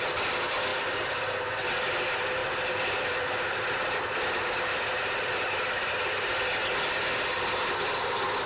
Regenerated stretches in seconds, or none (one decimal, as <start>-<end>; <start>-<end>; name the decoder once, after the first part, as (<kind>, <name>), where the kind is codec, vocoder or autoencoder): none